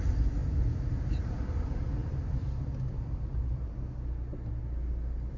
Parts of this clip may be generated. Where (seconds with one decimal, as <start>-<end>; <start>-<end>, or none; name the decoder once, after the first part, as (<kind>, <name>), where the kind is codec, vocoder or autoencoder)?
2.0-3.7 (vocoder, BigVGAN v2)